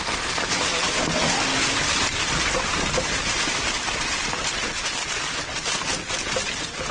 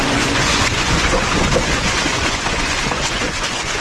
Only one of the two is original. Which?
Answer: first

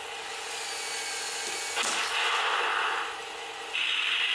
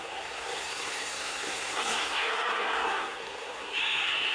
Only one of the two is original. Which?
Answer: first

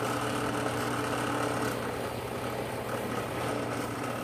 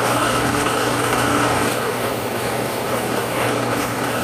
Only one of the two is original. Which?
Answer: first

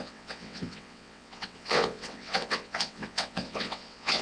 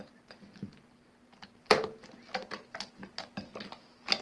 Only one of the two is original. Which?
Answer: second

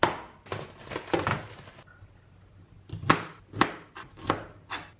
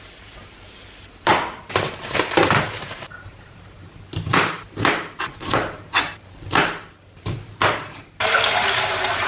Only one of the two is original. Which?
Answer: first